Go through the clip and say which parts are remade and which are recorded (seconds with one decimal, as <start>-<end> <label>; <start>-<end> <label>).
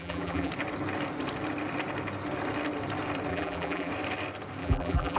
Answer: 0.0-0.5 remade; 0.5-3.3 recorded; 3.3-3.9 remade; 3.9-4.6 recorded; 4.6-5.2 remade